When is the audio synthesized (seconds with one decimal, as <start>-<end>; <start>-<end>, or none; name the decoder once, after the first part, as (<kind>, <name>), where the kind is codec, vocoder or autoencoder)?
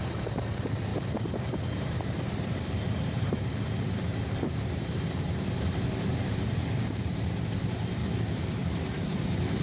0.0-8.0 (vocoder, BigVGAN v2); 8.6-9.6